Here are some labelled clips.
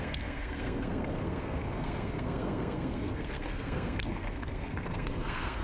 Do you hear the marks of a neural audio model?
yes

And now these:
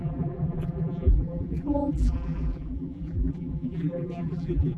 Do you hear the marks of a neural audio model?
yes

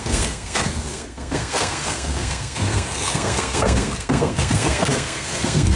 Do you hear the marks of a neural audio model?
yes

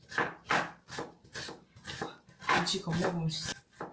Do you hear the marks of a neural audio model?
no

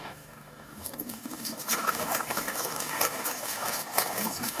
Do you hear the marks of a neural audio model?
yes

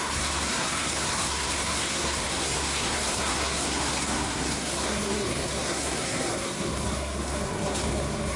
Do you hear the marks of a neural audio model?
yes